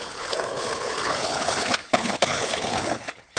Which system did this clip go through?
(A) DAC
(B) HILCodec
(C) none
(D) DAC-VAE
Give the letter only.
B